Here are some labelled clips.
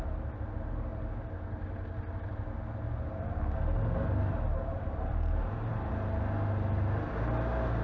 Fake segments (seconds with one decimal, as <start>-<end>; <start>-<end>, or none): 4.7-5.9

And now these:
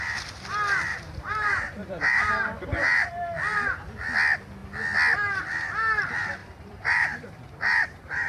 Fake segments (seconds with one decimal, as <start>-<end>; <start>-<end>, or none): 0.9-3.1; 6.4-8.3

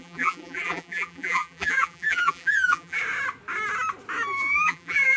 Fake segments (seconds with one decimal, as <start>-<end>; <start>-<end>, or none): 0.0-3.0; 4.4-5.2

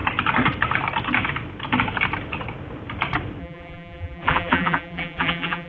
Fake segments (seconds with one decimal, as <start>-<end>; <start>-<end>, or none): 3.4-5.7

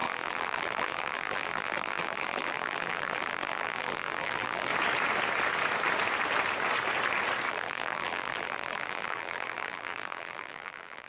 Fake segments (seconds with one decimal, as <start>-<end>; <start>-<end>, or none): 0.0-4.7; 7.5-11.1